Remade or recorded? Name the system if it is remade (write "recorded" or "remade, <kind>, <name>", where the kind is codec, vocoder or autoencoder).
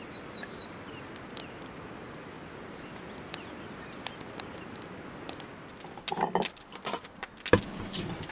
recorded